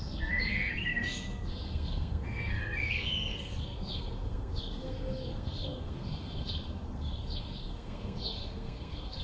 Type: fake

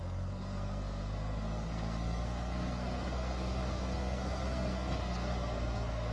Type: fake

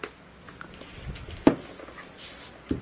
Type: real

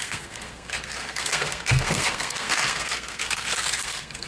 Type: fake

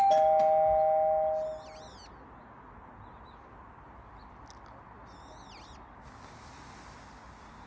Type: real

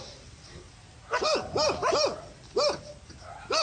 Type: real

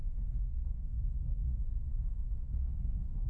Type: fake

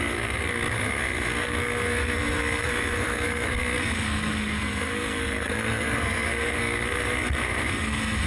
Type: fake